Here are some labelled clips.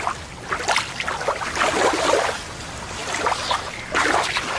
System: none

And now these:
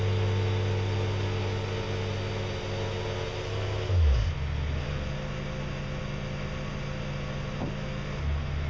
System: none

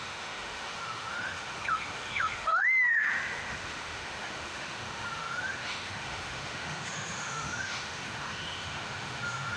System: autoencoder, DAC-VAE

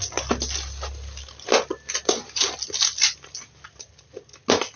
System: none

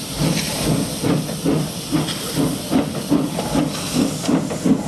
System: none